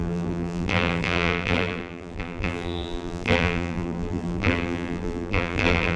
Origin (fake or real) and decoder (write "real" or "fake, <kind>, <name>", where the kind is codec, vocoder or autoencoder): fake, vocoder, BigVGAN v2